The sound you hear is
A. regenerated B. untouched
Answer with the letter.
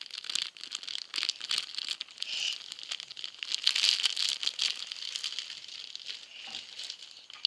B